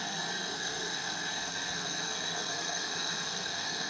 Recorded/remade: remade